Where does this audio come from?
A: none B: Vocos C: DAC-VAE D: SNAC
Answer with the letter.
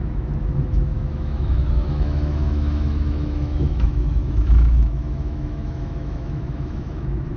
C